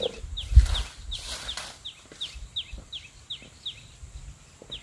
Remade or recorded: recorded